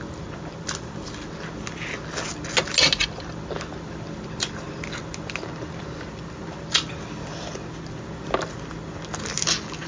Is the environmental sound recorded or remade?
recorded